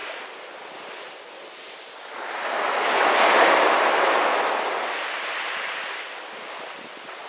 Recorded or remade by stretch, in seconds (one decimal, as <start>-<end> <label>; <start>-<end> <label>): 0.0-7.3 recorded